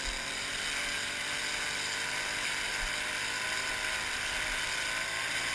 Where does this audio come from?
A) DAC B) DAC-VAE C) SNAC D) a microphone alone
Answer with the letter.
D